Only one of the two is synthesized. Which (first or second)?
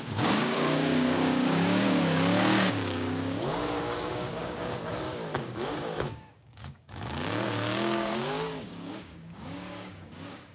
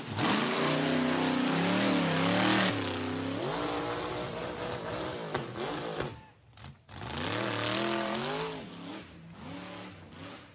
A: first